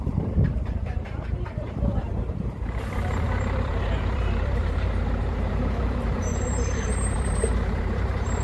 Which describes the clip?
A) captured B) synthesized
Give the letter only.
B